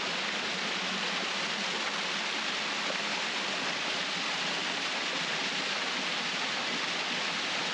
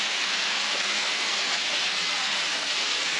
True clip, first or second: first